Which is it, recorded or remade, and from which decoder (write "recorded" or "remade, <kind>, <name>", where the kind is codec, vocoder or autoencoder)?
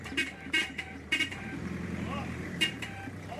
remade, vocoder, BigVGAN v2